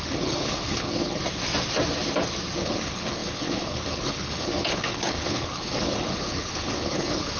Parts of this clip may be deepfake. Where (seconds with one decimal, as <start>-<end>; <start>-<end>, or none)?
0.0-1.2; 2.6-7.4

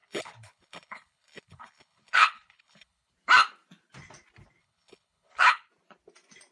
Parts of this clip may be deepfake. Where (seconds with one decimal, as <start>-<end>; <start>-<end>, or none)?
0.0-3.1; 4.6-5.7

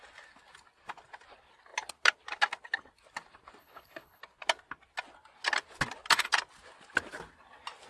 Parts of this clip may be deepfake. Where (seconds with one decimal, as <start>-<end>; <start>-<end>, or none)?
3.6-4.2

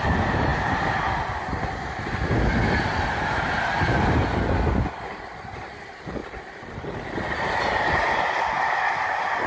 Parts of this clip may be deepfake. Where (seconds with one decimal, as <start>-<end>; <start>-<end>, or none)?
none